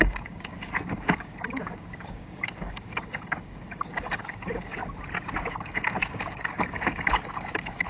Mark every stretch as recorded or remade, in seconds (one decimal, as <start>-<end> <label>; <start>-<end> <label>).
0.0-4.8 remade; 4.8-5.5 recorded; 5.5-7.9 remade